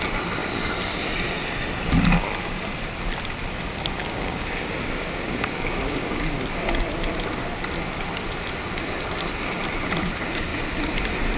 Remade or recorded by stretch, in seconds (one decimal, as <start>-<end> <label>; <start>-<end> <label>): 0.0-4.0 recorded; 4.0-6.3 remade; 6.3-11.4 recorded